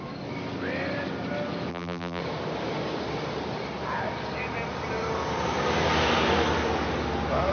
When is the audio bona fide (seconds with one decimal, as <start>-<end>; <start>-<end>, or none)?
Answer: 0.0-1.7; 2.2-7.5